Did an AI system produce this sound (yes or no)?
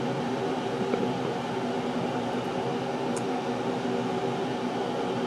no